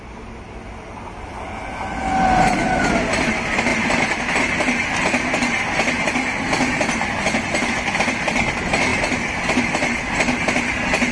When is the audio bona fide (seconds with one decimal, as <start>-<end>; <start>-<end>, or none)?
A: 0.0-11.1